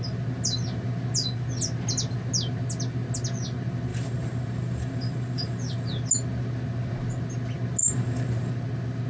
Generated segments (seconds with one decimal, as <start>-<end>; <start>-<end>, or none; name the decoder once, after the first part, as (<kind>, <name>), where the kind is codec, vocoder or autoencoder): 3.9-5.9 (vocoder, BigVGAN v2); 7.8-8.5